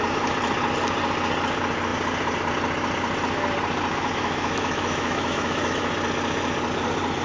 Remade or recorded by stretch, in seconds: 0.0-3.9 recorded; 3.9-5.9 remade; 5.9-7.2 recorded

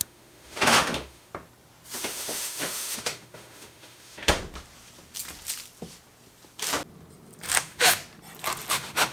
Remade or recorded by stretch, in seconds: 0.0-1.3 remade; 1.3-2.0 recorded; 2.0-4.4 remade; 4.4-7.6 recorded; 7.6-8.0 remade; 8.0-8.7 recorded; 8.7-9.1 remade

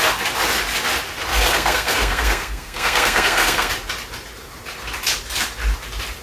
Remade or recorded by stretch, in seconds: 0.0-1.3 recorded; 1.3-3.7 remade; 3.7-6.2 recorded

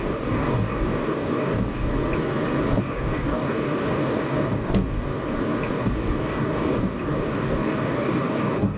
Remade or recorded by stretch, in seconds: 0.0-1.9 remade; 1.9-2.8 recorded; 2.8-5.1 remade; 5.1-5.7 recorded; 5.7-8.8 remade